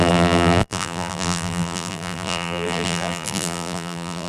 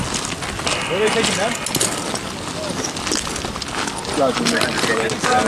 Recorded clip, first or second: second